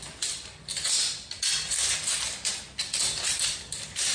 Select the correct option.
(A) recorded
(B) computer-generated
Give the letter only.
A